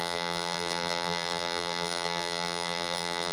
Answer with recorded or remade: remade